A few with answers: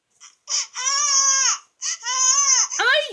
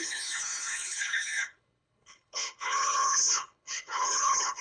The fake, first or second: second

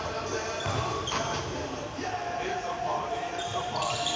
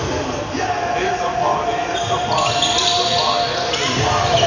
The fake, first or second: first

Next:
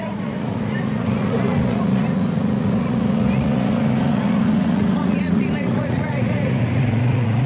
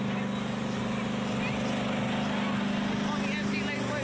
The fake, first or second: first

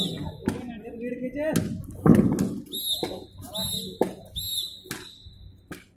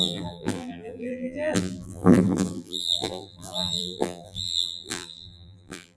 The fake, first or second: second